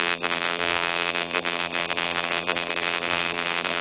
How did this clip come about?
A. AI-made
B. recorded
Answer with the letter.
A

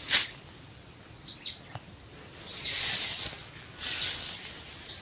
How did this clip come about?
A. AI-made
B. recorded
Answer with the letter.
B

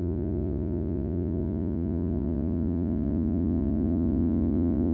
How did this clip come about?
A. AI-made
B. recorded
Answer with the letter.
A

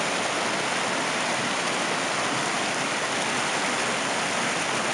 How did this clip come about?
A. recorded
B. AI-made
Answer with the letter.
A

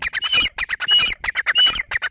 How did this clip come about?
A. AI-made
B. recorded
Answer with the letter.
B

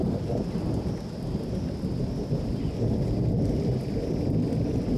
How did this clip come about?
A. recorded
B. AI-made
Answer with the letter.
A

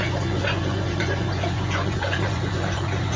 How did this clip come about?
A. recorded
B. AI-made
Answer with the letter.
B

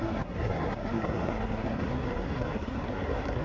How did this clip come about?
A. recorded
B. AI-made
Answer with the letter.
B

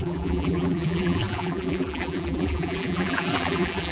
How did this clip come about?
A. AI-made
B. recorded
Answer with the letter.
A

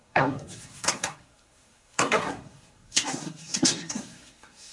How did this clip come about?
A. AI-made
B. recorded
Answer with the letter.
A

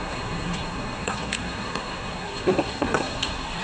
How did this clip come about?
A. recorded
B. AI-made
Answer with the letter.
B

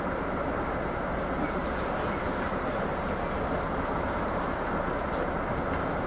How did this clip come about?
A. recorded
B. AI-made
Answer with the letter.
B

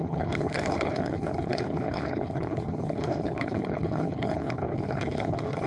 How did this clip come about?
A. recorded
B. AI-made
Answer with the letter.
B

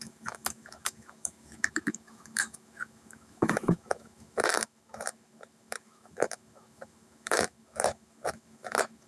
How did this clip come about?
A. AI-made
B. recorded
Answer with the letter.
A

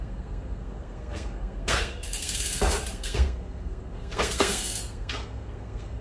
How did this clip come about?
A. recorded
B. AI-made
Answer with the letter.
B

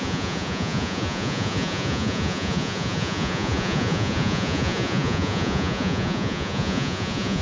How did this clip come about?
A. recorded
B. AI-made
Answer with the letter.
B